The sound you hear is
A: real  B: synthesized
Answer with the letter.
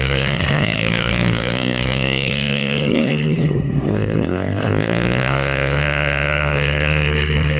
B